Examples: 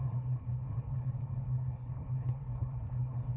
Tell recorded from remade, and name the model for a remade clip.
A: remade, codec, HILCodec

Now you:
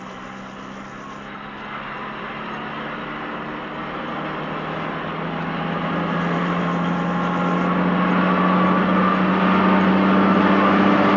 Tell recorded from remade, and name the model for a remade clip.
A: recorded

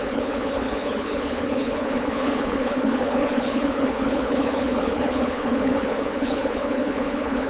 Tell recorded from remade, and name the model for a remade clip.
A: remade, codec, HILCodec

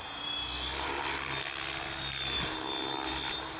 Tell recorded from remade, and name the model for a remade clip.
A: recorded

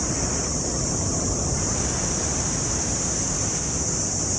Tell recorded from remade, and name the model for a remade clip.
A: recorded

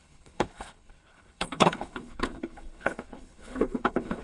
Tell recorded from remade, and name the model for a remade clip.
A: remade, codec, HILCodec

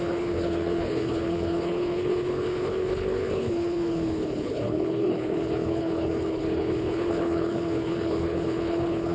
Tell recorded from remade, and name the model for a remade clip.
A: remade, codec, HILCodec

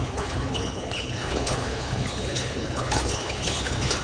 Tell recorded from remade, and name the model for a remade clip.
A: remade, codec, HILCodec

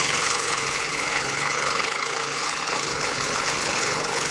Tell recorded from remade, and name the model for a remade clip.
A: remade, codec, HILCodec